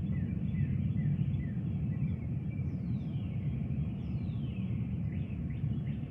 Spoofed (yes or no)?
yes